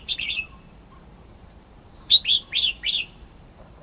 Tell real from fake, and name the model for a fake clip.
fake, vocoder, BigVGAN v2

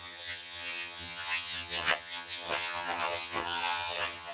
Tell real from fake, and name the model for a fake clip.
fake, vocoder, HiFi-GAN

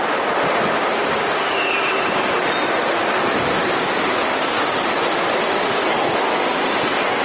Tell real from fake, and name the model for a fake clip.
fake, vocoder, BigVGAN v2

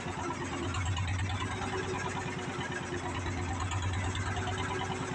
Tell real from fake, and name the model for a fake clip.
real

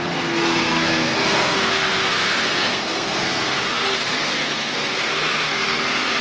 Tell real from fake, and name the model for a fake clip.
fake, codec, SNAC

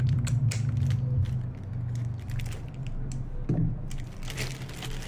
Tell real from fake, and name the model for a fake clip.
real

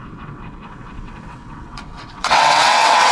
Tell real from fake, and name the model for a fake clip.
fake, vocoder, WaveNeXt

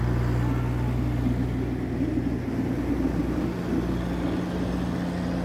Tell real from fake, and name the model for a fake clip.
real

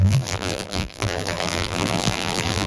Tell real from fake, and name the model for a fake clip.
fake, vocoder, BigVGAN v2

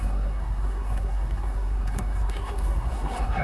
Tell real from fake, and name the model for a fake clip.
fake, codec, SNAC